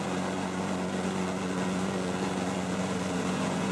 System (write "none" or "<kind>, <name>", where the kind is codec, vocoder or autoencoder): vocoder, Vocos